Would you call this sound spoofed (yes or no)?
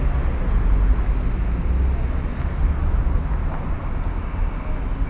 no